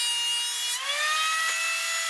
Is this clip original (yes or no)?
yes